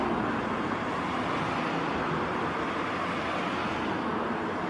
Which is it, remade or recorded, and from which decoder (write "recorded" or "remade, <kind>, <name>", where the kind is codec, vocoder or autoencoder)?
recorded